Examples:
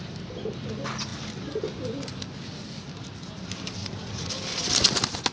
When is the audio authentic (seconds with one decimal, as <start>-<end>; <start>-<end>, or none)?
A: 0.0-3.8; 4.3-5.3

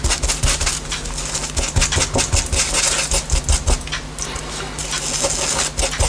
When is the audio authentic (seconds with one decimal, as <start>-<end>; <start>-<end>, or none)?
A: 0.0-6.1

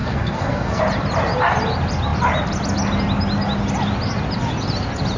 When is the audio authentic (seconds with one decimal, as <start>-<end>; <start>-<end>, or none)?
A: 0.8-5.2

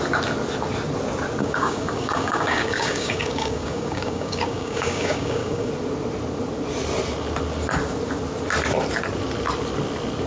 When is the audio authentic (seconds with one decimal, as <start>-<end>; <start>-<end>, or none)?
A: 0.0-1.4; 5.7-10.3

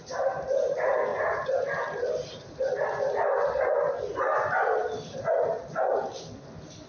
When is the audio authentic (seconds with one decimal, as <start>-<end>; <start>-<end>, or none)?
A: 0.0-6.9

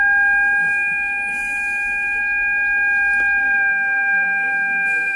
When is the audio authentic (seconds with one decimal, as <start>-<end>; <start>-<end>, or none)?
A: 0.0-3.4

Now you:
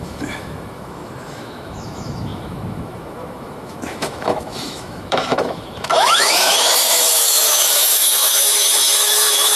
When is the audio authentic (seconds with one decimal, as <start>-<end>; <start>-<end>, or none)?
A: none